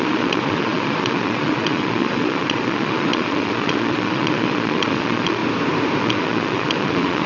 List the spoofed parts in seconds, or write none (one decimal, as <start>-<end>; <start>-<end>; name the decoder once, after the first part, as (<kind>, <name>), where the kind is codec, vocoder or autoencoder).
0.0-5.4 (vocoder, Vocos); 6.0-7.3